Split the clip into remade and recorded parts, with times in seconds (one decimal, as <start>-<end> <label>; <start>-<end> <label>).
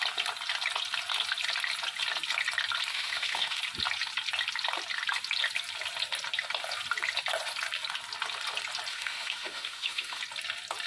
0.0-2.9 recorded; 2.9-3.6 remade; 3.6-8.9 recorded; 8.9-10.2 remade; 10.2-10.9 recorded